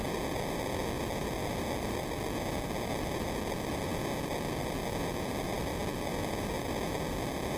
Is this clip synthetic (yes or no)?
no